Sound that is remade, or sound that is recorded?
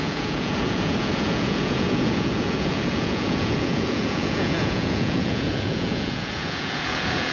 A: remade